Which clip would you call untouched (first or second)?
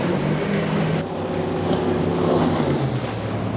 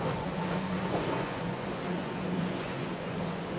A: first